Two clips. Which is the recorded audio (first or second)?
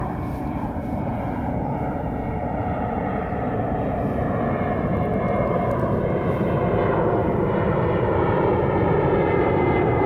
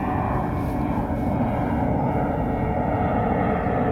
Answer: second